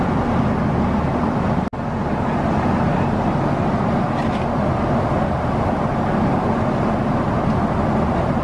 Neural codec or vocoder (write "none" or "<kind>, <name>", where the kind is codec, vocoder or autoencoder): none